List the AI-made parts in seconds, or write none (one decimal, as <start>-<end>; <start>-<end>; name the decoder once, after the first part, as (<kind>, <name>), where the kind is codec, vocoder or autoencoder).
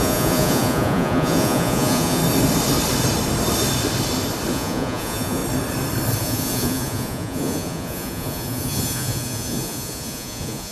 0.0-2.2 (vocoder, Vocos); 4.5-5.4; 6.2-10.7